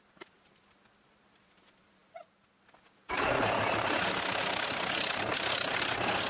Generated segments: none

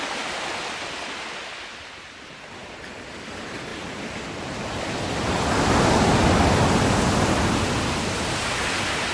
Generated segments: none